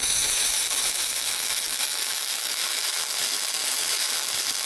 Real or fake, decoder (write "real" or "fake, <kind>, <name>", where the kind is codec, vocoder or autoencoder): fake, autoencoder, DAC-VAE